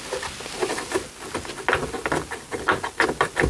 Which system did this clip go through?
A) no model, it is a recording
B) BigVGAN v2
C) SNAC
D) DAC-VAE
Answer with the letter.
A